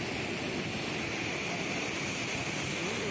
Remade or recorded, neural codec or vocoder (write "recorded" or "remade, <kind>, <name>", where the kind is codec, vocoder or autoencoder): recorded